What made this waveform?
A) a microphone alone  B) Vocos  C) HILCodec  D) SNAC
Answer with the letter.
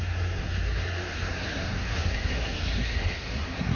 D